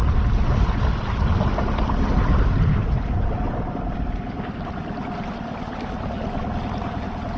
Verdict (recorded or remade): recorded